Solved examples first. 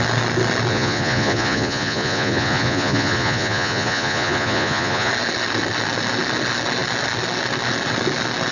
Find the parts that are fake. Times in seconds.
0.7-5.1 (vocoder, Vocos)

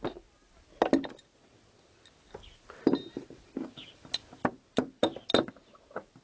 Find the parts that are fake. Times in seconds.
none

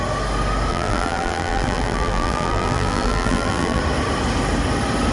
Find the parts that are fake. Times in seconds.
0.7-3.8 (vocoder, BigVGAN v2)